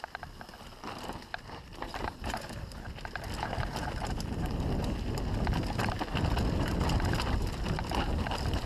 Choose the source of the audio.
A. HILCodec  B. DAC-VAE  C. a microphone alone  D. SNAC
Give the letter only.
C